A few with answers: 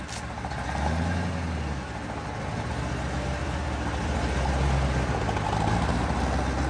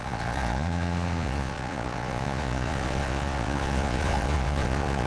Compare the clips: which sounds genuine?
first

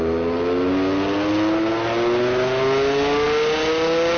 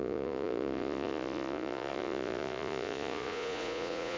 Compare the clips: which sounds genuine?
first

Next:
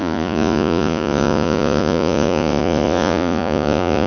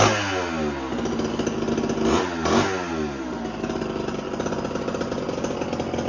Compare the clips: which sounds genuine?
second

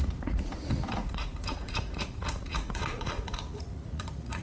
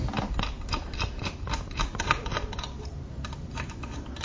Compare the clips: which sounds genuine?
second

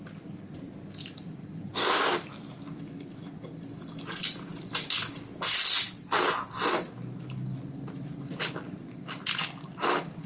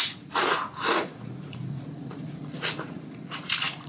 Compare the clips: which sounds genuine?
first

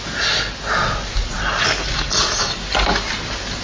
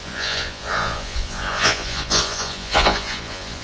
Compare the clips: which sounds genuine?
first